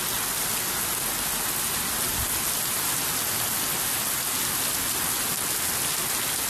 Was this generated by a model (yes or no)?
no